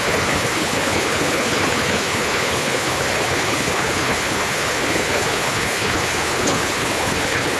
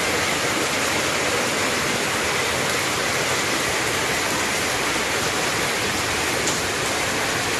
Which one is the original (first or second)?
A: second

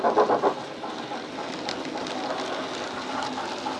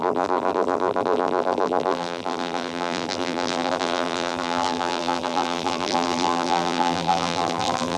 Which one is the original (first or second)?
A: first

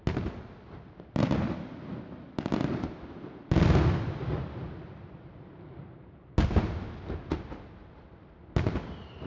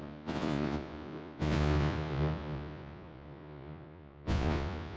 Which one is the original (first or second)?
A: first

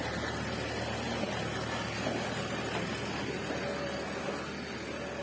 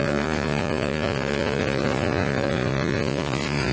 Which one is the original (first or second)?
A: first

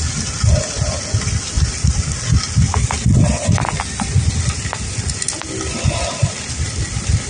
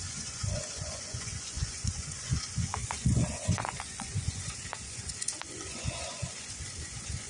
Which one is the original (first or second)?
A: first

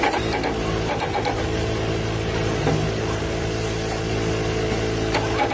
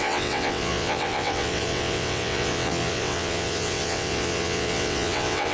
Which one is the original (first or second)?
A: first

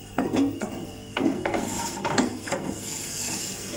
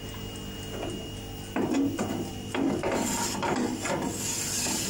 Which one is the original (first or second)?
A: second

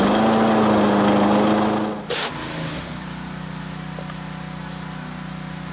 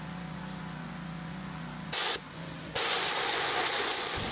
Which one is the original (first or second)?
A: first